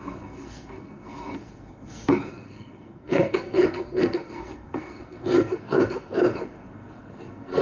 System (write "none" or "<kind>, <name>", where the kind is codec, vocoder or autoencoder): codec, SNAC